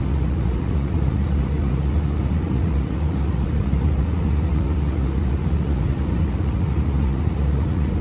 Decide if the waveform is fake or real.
fake